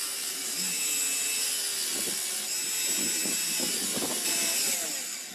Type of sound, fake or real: real